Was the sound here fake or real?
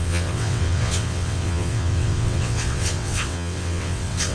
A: fake